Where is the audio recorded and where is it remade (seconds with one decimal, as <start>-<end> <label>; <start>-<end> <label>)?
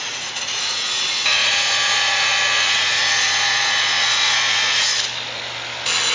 0.0-4.9 remade; 4.9-6.1 recorded